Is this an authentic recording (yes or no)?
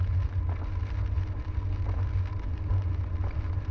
yes